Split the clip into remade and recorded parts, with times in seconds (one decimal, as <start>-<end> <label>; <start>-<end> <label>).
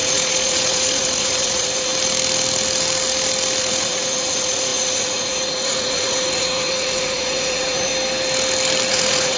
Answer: 0.0-1.9 remade; 1.9-3.6 recorded; 3.6-7.9 remade; 7.9-8.9 recorded; 8.9-9.4 remade